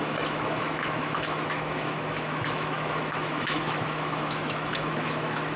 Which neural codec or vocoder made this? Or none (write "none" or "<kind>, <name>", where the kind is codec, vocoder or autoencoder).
autoencoder, DAC-VAE